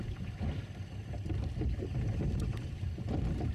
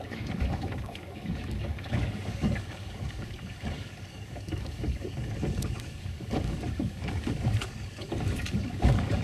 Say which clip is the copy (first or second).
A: second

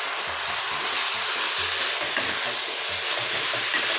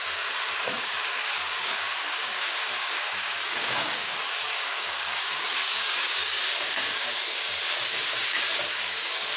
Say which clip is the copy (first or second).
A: second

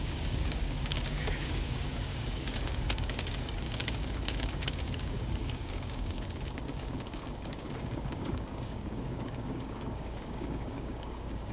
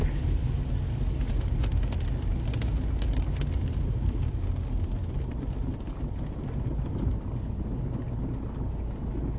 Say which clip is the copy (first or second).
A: first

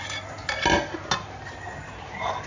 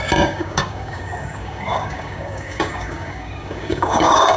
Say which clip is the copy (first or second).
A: second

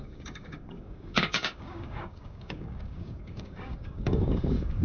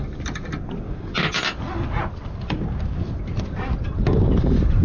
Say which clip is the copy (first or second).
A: first